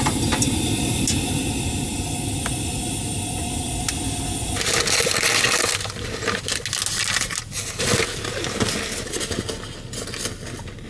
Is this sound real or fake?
real